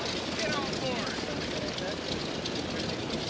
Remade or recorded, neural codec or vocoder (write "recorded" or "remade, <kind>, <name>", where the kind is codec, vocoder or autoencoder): recorded